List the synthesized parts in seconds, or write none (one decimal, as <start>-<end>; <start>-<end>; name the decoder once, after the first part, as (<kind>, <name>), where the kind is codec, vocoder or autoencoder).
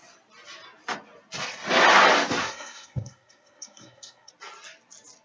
2.4-4.3 (codec, SNAC)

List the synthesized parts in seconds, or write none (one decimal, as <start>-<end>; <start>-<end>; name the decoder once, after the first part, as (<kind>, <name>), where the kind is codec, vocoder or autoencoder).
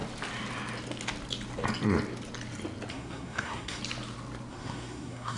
2.9-3.8 (codec, SNAC); 4.5-5.4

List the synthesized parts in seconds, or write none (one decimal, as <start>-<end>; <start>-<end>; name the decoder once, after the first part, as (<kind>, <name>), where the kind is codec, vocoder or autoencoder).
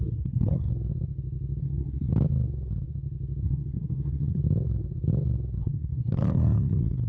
0.0-0.7 (codec, SNAC); 1.6-2.1; 3.4-4.4; 5.6-7.1